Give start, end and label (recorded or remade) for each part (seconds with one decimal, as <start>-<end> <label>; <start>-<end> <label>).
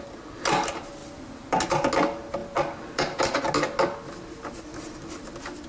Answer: 0.0-1.0 recorded; 1.0-1.6 remade; 1.6-2.4 recorded; 2.4-3.2 remade; 3.2-5.7 recorded